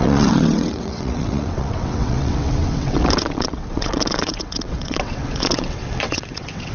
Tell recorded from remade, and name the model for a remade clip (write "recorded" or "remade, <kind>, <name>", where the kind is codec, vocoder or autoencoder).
remade, vocoder, WaveNeXt